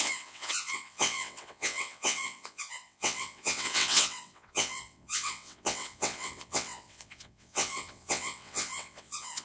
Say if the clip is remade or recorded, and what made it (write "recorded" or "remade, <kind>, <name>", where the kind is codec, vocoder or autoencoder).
remade, vocoder, WaveNeXt